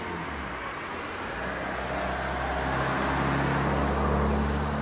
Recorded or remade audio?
recorded